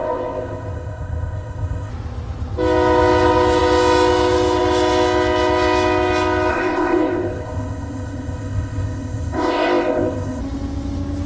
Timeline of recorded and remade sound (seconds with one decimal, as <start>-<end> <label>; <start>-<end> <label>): 0.0-1.9 remade; 1.9-6.5 recorded; 6.5-10.4 remade; 10.4-11.3 recorded